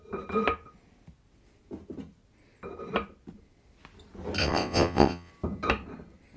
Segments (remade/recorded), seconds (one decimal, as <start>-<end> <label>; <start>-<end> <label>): 0.0-4.4 recorded; 4.4-5.3 remade; 5.3-6.4 recorded